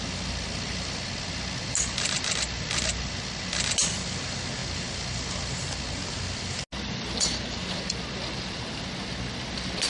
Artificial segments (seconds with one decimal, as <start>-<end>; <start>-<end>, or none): none